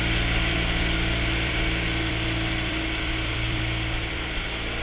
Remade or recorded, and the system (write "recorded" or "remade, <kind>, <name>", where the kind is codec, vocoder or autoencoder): remade, vocoder, BigVGAN v2